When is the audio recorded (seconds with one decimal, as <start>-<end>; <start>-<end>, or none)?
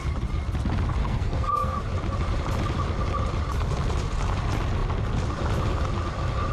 0.0-1.0; 1.8-6.5